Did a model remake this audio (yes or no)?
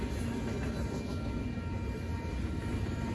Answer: no